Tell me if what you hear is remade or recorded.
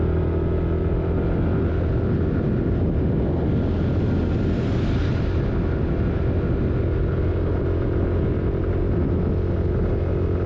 recorded